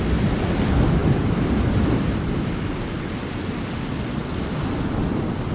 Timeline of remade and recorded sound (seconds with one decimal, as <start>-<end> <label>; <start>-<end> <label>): 0.0-1.0 recorded; 1.0-1.8 remade; 1.8-4.2 recorded; 4.2-5.5 remade

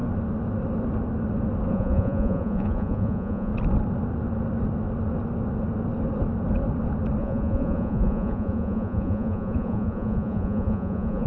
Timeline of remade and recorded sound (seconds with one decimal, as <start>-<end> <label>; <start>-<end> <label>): 0.0-1.7 recorded; 1.7-3.5 remade; 3.5-7.2 recorded; 7.2-11.3 remade

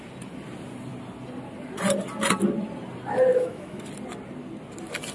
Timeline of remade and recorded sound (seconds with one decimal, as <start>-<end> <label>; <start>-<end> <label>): 0.0-3.3 recorded; 3.3-3.8 remade; 3.8-5.1 recorded